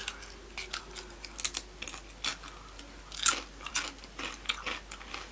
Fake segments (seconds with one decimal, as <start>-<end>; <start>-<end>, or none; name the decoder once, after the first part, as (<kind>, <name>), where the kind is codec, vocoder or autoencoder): none